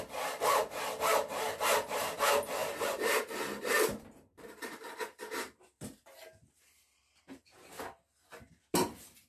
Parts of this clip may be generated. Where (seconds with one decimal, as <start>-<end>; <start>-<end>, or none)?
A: 2.6-3.2; 4.3-7.7